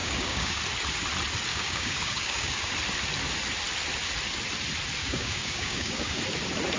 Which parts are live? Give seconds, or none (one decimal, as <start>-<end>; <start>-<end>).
0.6-1.5; 2.7-5.0; 6.2-6.8